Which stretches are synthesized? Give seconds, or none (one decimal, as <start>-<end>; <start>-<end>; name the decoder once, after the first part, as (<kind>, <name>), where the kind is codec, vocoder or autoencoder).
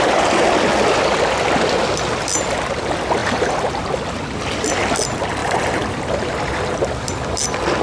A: 3.2-3.8 (vocoder, BigVGAN v2); 5.4-6.3